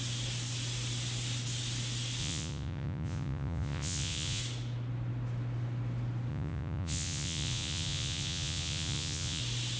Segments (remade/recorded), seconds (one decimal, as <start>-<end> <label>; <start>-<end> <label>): 0.0-2.2 recorded; 2.2-4.4 remade; 4.4-6.3 recorded; 6.3-9.4 remade; 9.4-9.8 recorded